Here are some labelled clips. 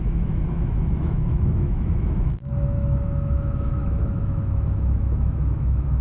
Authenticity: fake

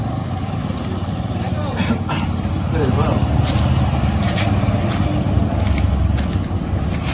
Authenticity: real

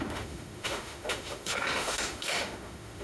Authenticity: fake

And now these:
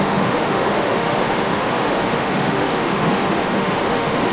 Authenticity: fake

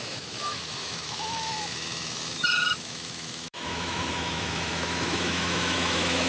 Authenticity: fake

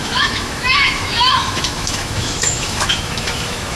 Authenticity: fake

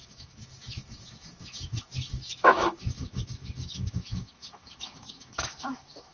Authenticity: fake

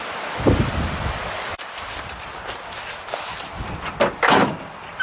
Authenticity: real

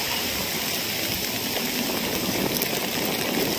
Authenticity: real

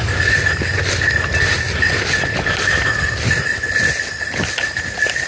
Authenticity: real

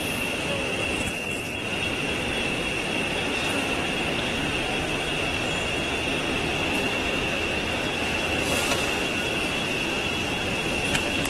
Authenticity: real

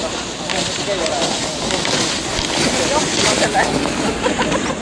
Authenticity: real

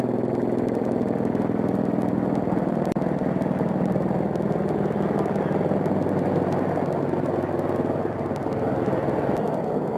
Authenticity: real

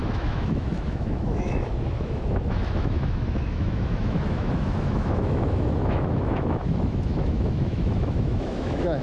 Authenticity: fake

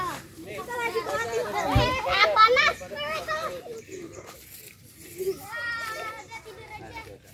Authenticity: real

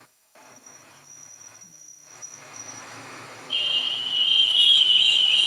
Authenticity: fake